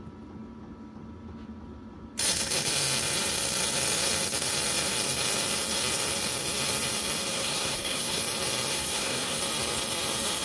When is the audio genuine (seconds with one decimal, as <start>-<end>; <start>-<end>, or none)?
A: 0.0-7.3; 8.2-8.7; 9.4-10.4